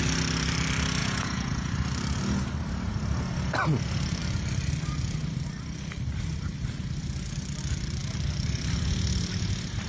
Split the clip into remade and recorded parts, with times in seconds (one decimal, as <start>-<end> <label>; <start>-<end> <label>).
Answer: 0.0-1.0 recorded; 1.0-1.7 remade; 1.7-9.9 recorded